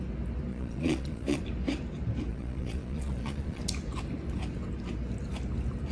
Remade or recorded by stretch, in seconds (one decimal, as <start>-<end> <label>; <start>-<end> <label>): 0.0-0.5 recorded; 0.5-1.4 remade; 1.4-2.3 recorded; 2.3-3.6 remade; 3.6-5.9 recorded

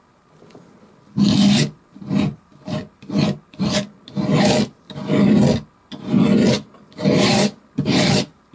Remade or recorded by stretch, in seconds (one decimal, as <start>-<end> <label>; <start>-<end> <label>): 0.0-8.5 recorded

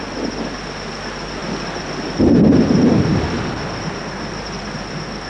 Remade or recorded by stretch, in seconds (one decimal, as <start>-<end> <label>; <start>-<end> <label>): 0.0-5.3 recorded

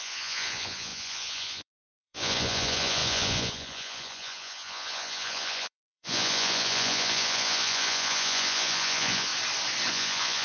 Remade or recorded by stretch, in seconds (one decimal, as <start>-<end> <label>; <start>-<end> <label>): 0.0-9.3 remade; 9.3-9.9 recorded; 9.9-10.4 remade

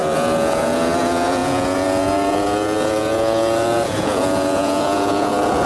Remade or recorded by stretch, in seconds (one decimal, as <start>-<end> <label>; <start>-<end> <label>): 0.0-5.7 remade

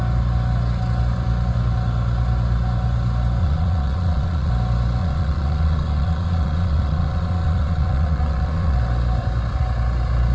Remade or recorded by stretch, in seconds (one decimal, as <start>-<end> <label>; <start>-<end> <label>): 0.0-3.4 recorded; 3.4-4.5 remade; 4.5-5.0 recorded; 5.0-8.8 remade; 8.8-10.3 recorded

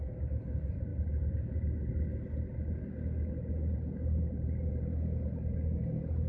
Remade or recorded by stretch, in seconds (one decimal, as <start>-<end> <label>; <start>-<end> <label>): 0.0-6.3 recorded